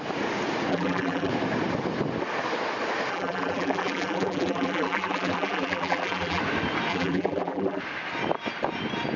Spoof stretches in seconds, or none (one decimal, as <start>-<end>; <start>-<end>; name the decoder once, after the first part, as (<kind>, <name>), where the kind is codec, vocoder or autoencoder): 0.7-1.3 (vocoder, BigVGAN v2); 3.1-6.4; 6.9-7.8